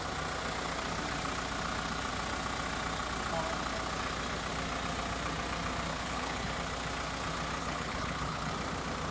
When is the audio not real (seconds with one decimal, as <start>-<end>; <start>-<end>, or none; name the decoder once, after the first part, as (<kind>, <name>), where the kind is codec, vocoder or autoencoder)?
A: 5.9-6.5 (codec, HILCodec); 7.6-8.5